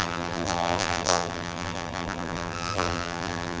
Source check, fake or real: fake